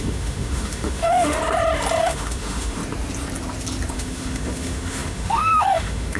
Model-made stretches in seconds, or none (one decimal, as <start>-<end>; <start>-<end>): 0.0-1.4; 2.0-2.8; 3.9-6.2